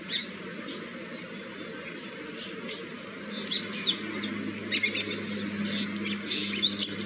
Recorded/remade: recorded